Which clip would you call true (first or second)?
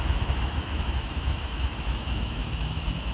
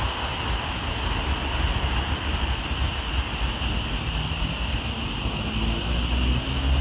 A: second